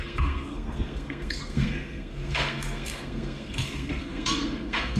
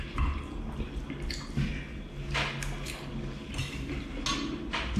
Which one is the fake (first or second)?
first